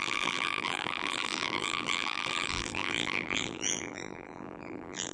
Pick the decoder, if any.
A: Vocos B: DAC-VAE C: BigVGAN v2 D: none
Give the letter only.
C